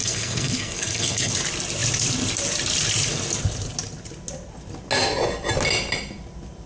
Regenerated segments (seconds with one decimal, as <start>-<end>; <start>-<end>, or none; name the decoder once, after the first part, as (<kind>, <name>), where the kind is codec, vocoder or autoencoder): 0.0-1.3 (codec, SNAC)